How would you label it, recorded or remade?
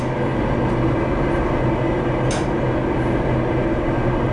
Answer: recorded